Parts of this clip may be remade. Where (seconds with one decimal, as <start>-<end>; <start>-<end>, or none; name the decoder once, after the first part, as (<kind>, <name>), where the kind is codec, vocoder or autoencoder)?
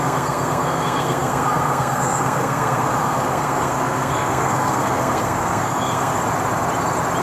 0.0-6.1 (codec, SNAC)